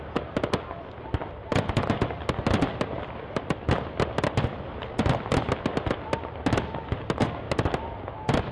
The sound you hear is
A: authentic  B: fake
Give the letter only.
A